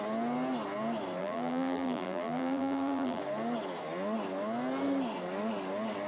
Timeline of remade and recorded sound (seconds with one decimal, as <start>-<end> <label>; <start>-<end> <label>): 0.0-1.2 recorded; 1.2-3.2 remade; 3.2-6.1 recorded